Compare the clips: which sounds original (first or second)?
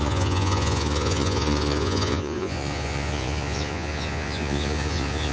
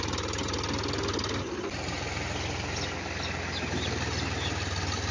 second